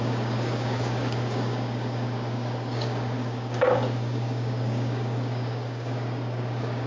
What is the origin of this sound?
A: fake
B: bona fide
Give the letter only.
A